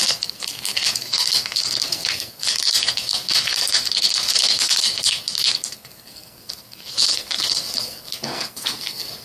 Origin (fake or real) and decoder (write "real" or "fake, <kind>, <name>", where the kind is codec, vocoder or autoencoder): fake, codec, SNAC